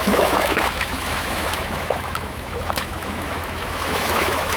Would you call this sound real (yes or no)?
no